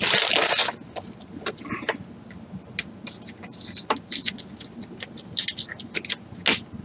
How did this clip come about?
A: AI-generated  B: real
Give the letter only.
B